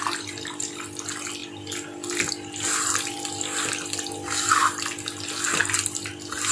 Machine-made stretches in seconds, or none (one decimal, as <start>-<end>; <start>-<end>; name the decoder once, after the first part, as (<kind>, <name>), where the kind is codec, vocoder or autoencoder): none